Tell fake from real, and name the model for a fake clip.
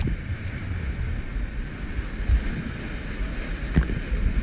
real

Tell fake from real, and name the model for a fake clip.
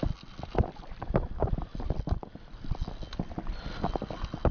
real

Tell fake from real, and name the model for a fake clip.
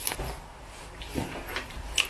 real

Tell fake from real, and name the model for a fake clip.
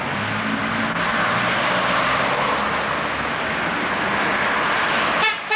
real